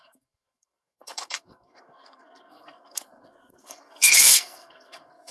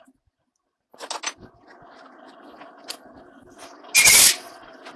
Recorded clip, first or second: second